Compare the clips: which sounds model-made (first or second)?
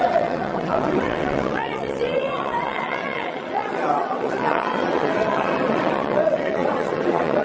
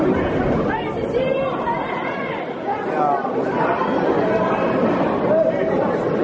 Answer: first